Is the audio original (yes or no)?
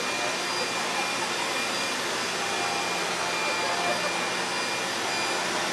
yes